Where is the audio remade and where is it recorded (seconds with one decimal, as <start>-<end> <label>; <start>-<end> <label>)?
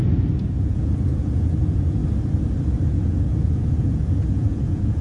0.0-0.6 recorded; 0.6-2.0 remade; 2.0-2.9 recorded; 2.9-5.0 remade